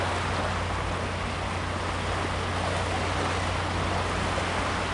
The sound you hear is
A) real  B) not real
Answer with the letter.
A